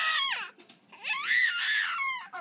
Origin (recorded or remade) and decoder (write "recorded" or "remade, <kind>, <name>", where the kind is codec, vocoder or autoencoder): remade, vocoder, BigVGAN v2